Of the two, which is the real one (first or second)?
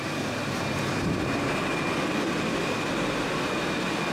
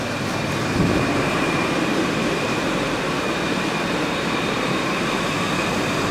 first